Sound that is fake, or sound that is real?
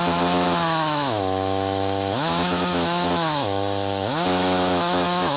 fake